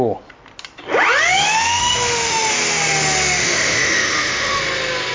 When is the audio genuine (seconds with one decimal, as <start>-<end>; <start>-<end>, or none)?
0.0-1.8; 2.5-3.4; 4.6-5.1